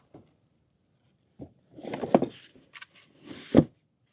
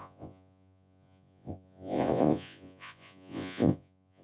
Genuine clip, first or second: first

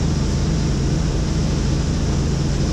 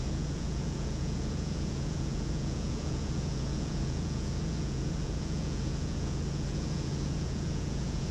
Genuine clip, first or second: first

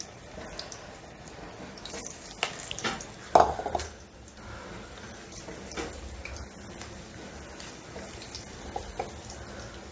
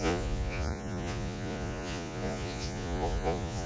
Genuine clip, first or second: first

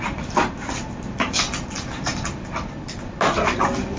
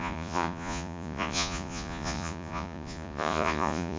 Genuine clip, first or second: first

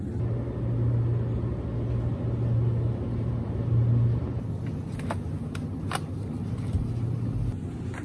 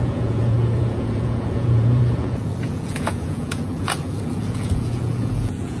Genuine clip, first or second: first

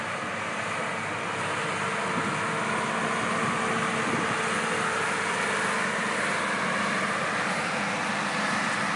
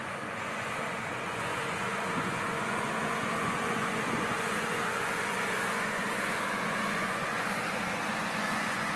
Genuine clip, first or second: first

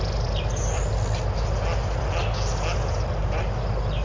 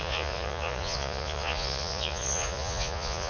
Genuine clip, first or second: first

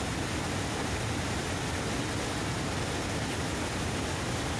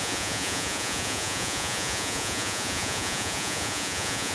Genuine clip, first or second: first